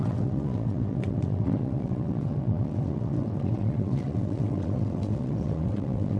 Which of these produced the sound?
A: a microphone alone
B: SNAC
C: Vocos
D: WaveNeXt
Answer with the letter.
D